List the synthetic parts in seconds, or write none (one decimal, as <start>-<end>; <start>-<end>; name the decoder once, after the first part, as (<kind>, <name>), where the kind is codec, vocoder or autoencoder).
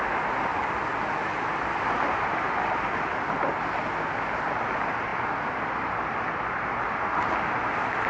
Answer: none